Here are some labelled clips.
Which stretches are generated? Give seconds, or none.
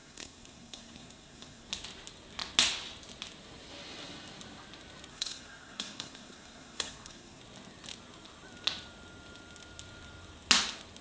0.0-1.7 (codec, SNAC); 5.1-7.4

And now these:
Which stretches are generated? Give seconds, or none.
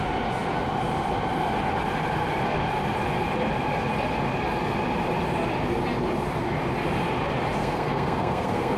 7.6-8.8 (codec, SNAC)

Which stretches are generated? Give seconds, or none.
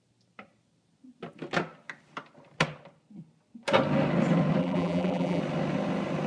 4.6-5.4 (vocoder, BigVGAN v2)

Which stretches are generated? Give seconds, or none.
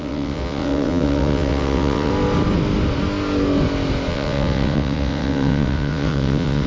0.0-2.1 (vocoder, WaveNeXt); 4.1-6.7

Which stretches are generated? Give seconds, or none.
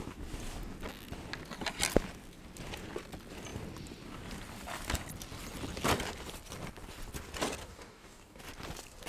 7.6-8.4 (codec, DAC)